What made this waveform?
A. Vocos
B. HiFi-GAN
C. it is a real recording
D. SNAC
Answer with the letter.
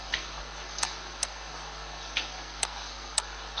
D